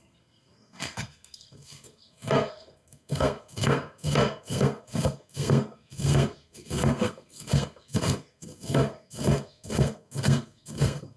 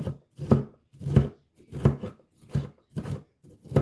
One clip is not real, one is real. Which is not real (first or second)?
first